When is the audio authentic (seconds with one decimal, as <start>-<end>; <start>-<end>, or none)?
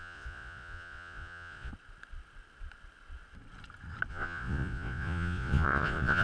1.7-4.1